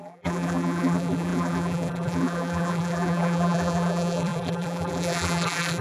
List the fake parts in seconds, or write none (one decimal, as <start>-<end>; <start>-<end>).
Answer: 0.0-5.8